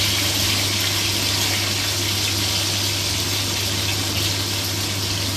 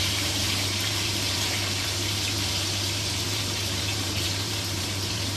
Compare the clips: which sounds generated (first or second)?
second